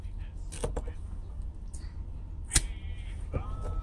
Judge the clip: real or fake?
real